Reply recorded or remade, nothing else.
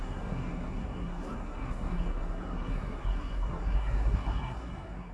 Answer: remade